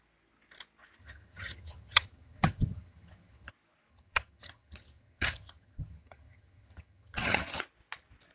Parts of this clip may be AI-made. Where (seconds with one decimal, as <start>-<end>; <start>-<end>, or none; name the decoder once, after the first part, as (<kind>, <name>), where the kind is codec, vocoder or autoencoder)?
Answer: 1.0-3.5 (vocoder, HiFi-GAN); 3.9-7.6